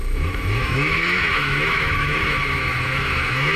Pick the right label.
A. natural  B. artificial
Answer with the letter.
B